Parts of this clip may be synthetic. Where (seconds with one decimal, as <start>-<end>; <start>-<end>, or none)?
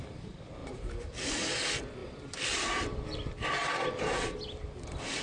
0.6-1.3; 2.0-5.2